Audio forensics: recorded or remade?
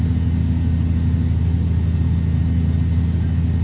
recorded